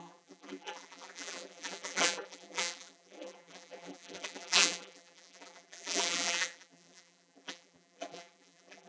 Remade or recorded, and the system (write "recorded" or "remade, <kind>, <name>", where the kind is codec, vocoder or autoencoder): remade, vocoder, BigVGAN v2